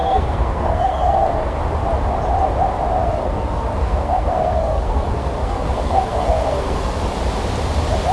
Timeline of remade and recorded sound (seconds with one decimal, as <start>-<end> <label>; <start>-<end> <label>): 0.0-1.6 remade; 1.6-3.0 recorded; 3.0-7.0 remade; 7.0-8.1 recorded